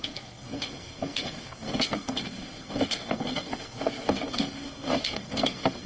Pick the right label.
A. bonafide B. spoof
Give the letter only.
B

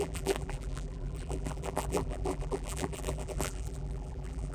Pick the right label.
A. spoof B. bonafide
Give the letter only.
A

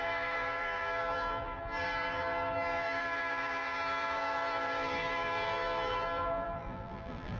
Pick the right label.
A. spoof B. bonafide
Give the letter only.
A